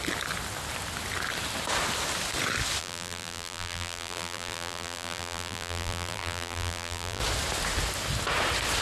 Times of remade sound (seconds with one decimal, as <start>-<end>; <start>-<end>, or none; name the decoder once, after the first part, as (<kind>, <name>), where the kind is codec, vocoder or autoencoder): 2.8-7.2 (vocoder, BigVGAN v2)